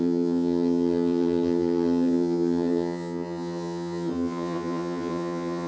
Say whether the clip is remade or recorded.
remade